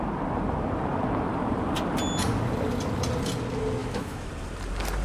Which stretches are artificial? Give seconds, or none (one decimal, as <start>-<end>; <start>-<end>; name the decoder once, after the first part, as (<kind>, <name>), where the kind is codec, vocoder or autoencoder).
3.8-4.3 (autoencoder, DAC-VAE)